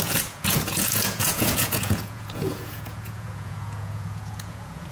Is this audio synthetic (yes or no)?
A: yes